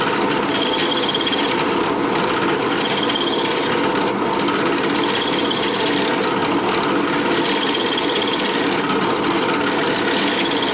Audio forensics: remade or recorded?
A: recorded